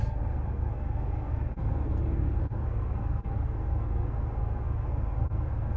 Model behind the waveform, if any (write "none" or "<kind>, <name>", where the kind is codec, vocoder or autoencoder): codec, SNAC